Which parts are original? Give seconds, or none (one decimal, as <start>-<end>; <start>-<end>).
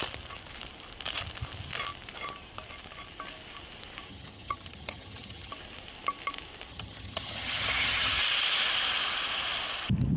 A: 0.0-4.1; 5.5-6.7; 8.2-10.2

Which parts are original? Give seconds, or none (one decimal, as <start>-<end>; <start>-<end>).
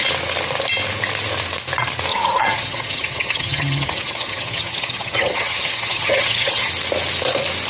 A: 0.0-2.1; 6.7-7.7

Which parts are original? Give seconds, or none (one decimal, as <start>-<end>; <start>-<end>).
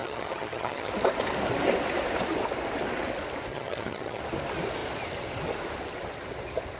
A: 0.9-3.5; 4.2-6.8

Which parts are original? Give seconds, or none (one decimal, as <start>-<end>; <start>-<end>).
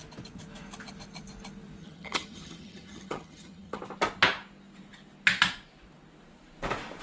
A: 0.0-1.8; 3.8-7.0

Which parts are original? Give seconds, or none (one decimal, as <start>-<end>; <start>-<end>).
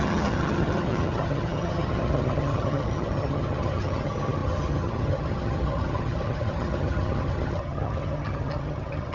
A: none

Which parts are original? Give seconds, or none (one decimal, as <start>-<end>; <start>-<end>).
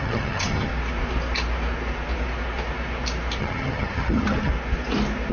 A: 0.7-3.4; 4.5-5.3